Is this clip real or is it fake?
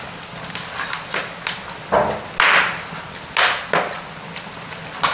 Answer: real